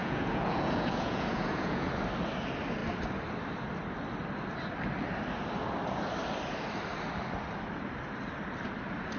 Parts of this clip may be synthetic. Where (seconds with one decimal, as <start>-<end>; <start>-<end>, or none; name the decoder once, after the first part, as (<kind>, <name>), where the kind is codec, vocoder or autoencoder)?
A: 0.0-1.9 (vocoder, Vocos)